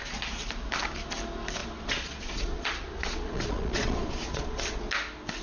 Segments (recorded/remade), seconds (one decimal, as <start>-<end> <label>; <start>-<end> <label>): 0.0-1.6 recorded; 1.6-4.8 remade; 4.8-5.4 recorded